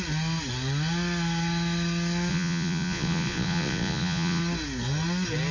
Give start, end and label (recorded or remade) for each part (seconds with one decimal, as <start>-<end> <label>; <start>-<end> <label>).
0.0-2.3 recorded; 2.3-4.4 remade; 4.4-5.5 recorded